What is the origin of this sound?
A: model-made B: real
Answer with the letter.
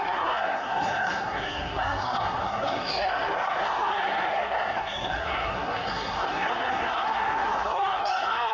A